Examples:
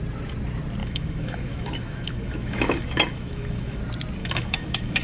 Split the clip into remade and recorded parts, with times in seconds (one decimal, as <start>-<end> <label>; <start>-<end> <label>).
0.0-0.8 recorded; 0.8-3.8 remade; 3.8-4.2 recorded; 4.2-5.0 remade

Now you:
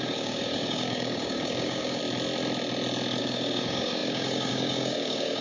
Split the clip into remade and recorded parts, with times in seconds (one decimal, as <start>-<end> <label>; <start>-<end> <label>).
0.0-2.0 remade; 2.0-3.2 recorded; 3.2-5.4 remade

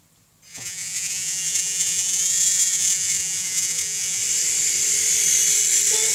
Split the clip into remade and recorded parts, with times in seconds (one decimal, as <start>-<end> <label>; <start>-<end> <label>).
0.0-0.5 recorded; 0.5-4.2 remade; 4.2-6.1 recorded

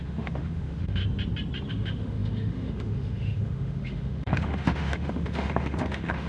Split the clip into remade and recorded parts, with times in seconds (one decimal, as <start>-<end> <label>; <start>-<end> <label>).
0.0-1.0 remade; 1.0-1.7 recorded; 1.7-6.3 remade

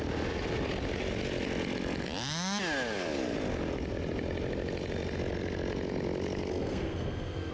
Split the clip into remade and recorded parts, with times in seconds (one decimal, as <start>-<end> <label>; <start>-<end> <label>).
0.0-6.5 recorded; 6.5-7.5 remade

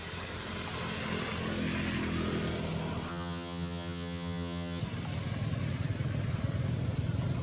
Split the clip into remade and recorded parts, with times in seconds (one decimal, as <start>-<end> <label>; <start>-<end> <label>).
0.0-3.1 recorded; 3.1-4.8 remade; 4.8-7.4 recorded